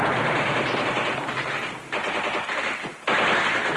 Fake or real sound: real